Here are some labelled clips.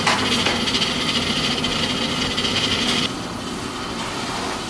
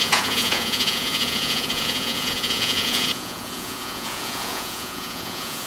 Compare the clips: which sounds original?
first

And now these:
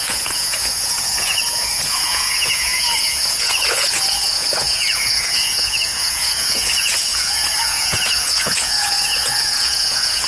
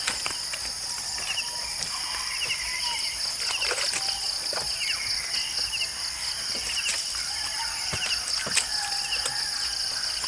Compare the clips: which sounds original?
second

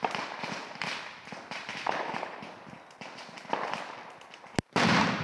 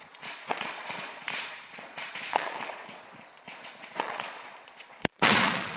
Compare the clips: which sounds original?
first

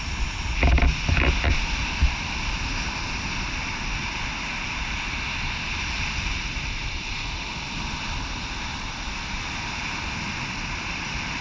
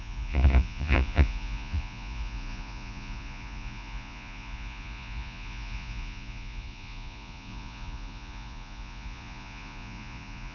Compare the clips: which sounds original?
first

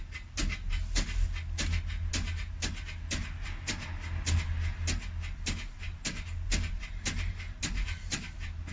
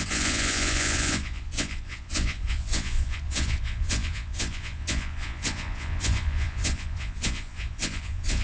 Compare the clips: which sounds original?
first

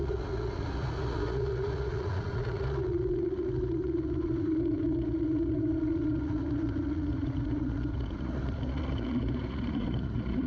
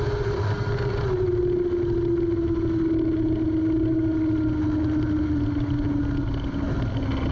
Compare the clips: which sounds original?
second